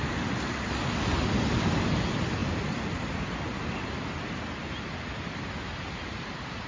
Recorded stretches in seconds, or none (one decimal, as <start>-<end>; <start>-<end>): 0.0-6.7